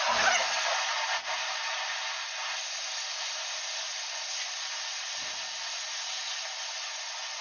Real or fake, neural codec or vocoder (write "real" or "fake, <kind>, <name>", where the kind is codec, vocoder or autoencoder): real